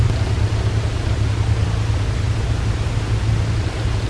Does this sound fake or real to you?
real